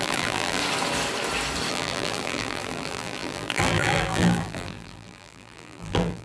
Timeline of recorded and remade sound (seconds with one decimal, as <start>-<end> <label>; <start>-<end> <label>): 0.0-0.6 remade; 0.6-1.7 recorded; 1.7-6.2 remade